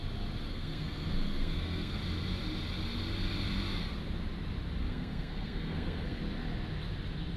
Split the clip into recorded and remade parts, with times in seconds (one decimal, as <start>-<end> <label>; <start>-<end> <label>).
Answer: 0.0-0.5 recorded; 0.5-2.0 remade; 2.0-4.8 recorded; 4.8-6.2 remade; 6.2-7.4 recorded